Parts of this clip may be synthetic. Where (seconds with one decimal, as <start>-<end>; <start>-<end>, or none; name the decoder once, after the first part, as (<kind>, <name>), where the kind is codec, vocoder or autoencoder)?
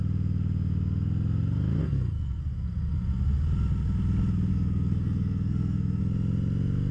1.8-2.4 (codec, SNAC); 4.5-6.0